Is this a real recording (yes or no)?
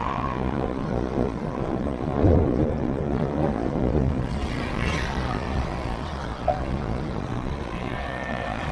no